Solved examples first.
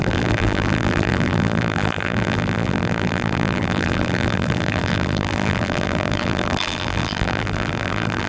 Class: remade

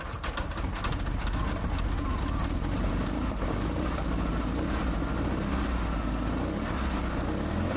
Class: recorded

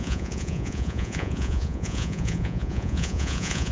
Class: remade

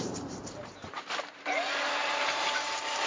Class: remade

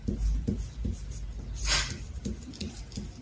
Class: remade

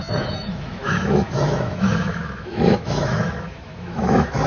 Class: remade